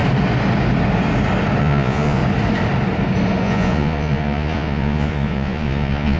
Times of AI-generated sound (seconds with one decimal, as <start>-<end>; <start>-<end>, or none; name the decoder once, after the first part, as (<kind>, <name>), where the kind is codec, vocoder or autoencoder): 1.6-2.2 (vocoder, Vocos); 3.4-6.2

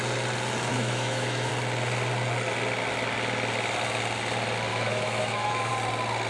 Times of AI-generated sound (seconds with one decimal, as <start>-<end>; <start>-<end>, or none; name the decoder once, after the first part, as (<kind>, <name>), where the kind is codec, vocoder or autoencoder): 0.7-1.5 (autoencoder, DAC-VAE); 4.7-5.7

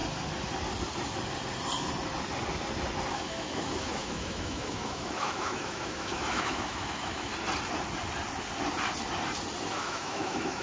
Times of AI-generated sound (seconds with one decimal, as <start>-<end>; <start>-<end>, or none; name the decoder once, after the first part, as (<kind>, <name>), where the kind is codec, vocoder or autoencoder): 3.1-7.3 (autoencoder, DAC-VAE); 9.6-10.6

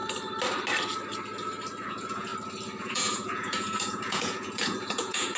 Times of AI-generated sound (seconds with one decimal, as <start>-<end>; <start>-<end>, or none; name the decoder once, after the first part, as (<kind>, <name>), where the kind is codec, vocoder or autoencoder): 1.9-2.3 (vocoder, Vocos); 2.8-5.4

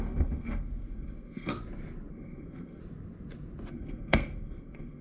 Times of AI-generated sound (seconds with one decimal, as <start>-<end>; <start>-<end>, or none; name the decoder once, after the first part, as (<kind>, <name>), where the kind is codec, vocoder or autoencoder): 0.0-1.5 (codec, SNAC); 2.1-2.8; 3.7-5.0

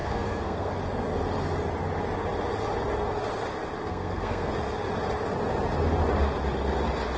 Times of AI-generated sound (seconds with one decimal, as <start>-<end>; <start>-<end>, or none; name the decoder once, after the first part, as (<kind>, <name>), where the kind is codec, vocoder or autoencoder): 0.0-0.7 (codec, SNAC); 3.8-4.5